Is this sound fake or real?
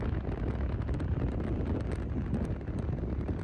real